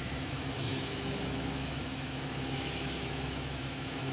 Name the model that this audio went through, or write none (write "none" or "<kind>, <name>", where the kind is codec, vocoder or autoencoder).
autoencoder, DAC-VAE